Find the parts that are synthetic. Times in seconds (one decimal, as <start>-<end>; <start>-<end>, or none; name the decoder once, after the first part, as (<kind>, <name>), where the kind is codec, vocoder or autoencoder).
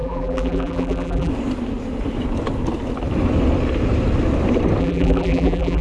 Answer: 0.0-1.3 (vocoder, BigVGAN v2); 4.8-5.8